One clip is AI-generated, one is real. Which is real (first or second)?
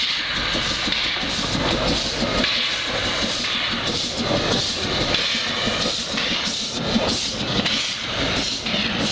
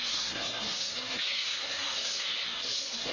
first